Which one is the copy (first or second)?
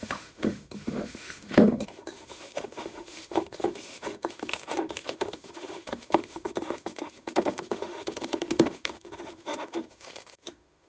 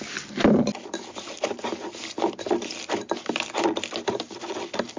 first